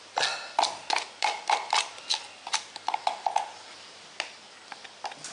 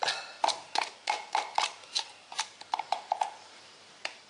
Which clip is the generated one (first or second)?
second